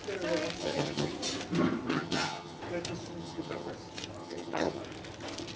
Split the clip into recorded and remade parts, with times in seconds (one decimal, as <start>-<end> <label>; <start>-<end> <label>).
0.0-0.6 recorded; 0.6-1.1 remade; 1.1-1.9 recorded; 1.9-2.6 remade; 2.6-3.2 recorded; 3.2-3.7 remade; 3.7-4.2 recorded; 4.2-4.8 remade; 4.8-5.6 recorded